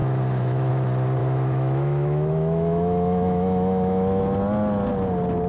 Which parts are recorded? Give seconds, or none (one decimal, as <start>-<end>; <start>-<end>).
0.7-1.2; 4.2-5.5